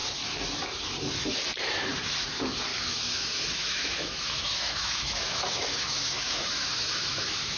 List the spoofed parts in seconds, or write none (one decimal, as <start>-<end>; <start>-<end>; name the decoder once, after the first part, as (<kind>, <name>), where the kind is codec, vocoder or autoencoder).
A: 2.7-7.6 (autoencoder, DAC-VAE)